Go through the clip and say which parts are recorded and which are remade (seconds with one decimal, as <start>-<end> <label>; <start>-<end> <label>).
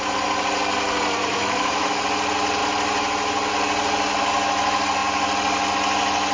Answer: 0.0-1.3 recorded; 1.3-2.0 remade; 2.0-6.3 recorded